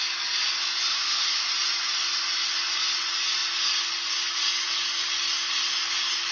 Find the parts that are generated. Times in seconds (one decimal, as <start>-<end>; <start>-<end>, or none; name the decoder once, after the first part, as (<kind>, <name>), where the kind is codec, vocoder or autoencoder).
0.9-1.5 (autoencoder, DAC-VAE)